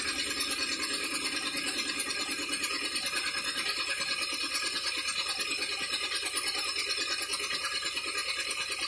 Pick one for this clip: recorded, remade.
recorded